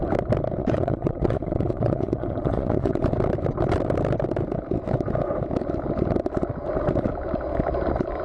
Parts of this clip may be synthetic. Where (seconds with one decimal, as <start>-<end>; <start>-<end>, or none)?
0.6-3.0